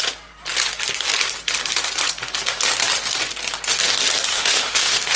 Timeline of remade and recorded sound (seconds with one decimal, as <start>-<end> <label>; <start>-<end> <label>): 0.0-4.3 recorded; 4.3-5.2 remade